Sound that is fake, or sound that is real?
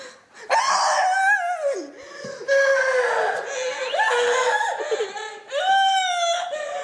real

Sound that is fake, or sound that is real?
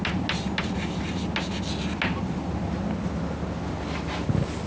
real